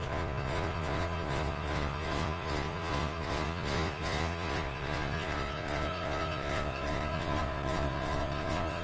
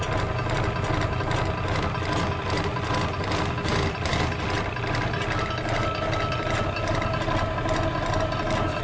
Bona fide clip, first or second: second